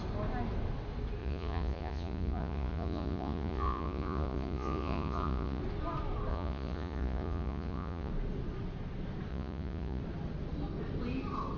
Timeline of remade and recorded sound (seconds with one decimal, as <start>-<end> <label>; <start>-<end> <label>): 0.0-1.2 recorded; 1.2-5.6 remade; 5.6-6.3 recorded; 6.3-8.1 remade; 8.1-9.3 recorded; 9.3-10.0 remade; 10.0-11.6 recorded